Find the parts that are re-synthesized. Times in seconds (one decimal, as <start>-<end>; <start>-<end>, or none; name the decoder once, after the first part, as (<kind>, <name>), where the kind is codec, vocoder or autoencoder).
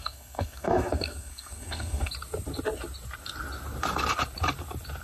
0.0-2.1 (codec, SNAC)